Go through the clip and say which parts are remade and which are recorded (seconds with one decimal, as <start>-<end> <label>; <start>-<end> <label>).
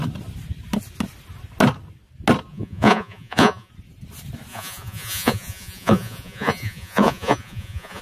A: 0.0-2.5 recorded; 2.5-3.7 remade; 3.7-4.5 recorded; 4.5-8.0 remade